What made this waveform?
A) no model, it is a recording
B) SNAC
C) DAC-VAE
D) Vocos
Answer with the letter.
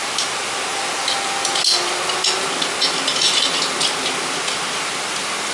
A